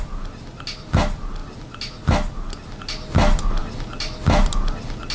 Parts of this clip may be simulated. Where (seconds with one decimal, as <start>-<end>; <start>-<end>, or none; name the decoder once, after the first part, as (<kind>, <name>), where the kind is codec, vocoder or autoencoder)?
none